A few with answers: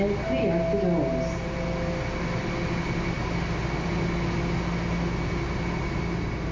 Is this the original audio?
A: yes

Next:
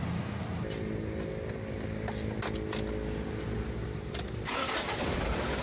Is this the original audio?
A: yes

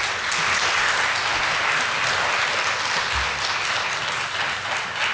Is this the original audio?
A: yes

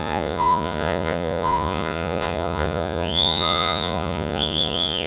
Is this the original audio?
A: no